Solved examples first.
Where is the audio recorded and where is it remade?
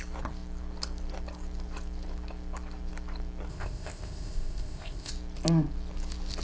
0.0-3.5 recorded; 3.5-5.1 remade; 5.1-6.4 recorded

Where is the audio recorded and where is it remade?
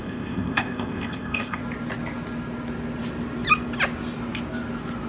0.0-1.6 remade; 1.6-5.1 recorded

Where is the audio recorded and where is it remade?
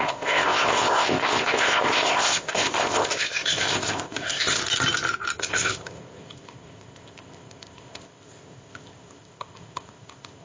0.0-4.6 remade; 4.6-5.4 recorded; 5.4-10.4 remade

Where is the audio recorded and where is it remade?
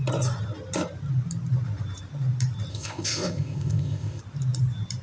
0.0-2.7 recorded; 2.7-4.2 remade; 4.2-5.0 recorded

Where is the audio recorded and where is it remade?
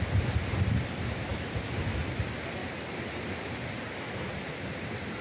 0.0-5.2 recorded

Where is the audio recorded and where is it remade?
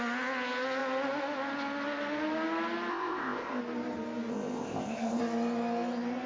0.0-2.9 recorded; 2.9-3.6 remade; 3.6-4.3 recorded; 4.3-5.2 remade; 5.2-6.3 recorded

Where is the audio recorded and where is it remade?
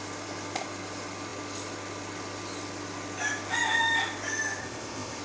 0.0-4.6 recorded; 4.6-5.2 remade